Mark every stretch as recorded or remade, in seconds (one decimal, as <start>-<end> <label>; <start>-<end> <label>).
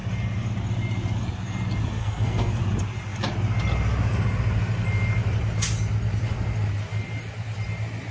0.0-2.0 recorded; 2.0-2.6 remade; 2.6-8.1 recorded